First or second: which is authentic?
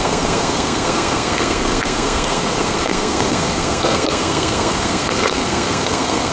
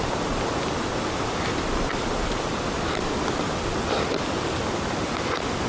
second